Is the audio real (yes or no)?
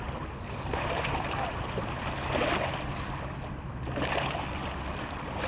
yes